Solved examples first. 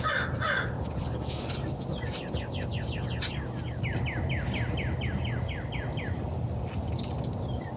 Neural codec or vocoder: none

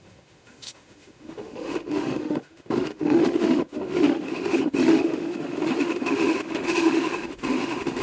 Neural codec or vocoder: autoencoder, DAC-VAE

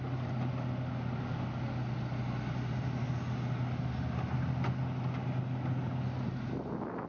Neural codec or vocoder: none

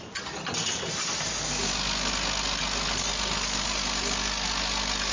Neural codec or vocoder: none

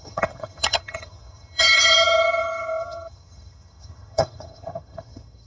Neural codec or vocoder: vocoder, HiFi-GAN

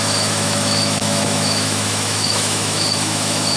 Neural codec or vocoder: autoencoder, DAC-VAE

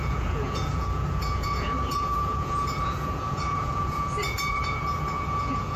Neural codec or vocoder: vocoder, Vocos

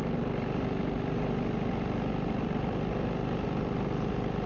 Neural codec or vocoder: none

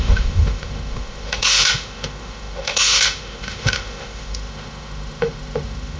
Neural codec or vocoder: autoencoder, DAC-VAE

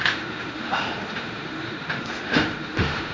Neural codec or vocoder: autoencoder, DAC-VAE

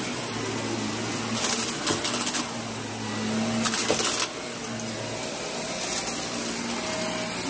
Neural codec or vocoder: none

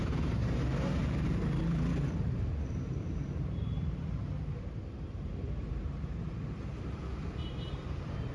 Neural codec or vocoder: vocoder, BigVGAN v2